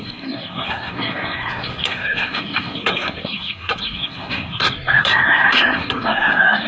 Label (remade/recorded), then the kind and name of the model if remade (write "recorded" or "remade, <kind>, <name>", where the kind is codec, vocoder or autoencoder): remade, codec, SNAC